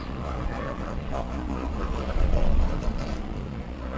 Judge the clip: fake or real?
fake